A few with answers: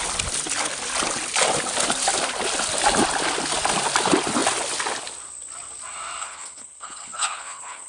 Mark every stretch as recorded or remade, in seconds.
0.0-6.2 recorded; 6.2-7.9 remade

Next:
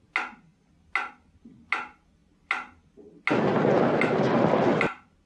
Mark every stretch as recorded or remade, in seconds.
0.0-5.3 recorded

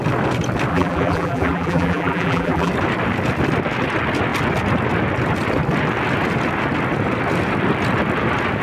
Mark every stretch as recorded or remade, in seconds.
0.0-0.7 recorded; 0.7-2.7 remade; 2.7-8.6 recorded

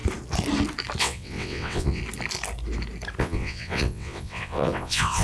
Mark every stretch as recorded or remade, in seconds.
0.0-1.0 recorded; 1.0-2.0 remade; 2.0-3.2 recorded; 3.2-5.2 remade

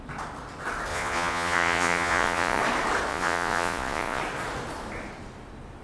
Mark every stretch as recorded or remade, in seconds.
0.0-0.9 recorded; 0.9-2.6 remade; 2.6-3.1 recorded; 3.1-4.2 remade; 4.2-5.8 recorded

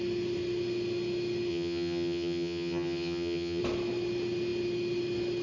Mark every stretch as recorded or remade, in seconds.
0.0-1.5 recorded; 1.5-3.6 remade; 3.6-5.4 recorded